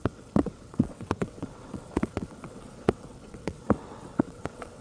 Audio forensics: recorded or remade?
remade